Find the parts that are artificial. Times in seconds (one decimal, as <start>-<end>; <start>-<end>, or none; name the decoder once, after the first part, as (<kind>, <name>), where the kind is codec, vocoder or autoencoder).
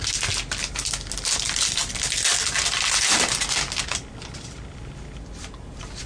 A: none